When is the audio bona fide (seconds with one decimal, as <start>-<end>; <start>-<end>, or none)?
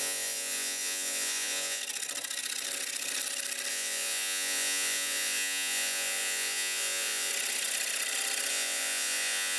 1.8-3.7; 7.3-8.5